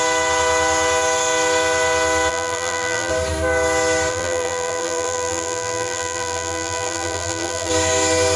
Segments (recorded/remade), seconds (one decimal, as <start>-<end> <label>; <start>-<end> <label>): 0.0-2.3 recorded; 2.3-3.1 remade; 3.1-4.1 recorded; 4.1-7.7 remade; 7.7-8.4 recorded